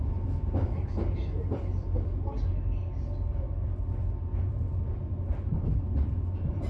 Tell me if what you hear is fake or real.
real